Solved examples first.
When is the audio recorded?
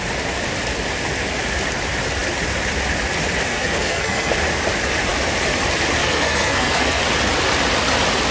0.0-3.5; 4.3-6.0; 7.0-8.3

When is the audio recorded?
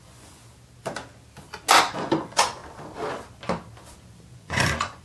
0.4-1.8; 2.6-4.3